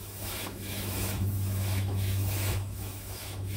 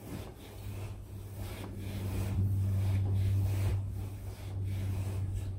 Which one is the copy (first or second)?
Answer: first